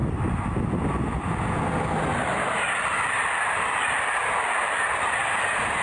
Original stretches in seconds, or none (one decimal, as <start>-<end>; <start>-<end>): 0.0-5.8